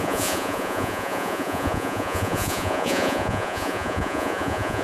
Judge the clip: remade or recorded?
remade